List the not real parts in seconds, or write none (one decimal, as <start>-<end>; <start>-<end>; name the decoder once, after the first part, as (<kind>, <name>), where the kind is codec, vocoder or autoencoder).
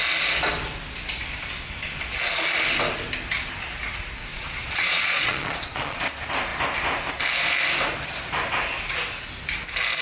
4.3-6.0 (vocoder, Vocos)